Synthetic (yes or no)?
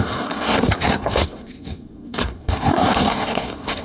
yes